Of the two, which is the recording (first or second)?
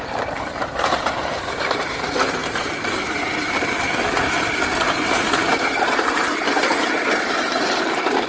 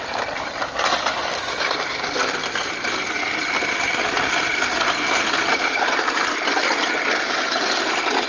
second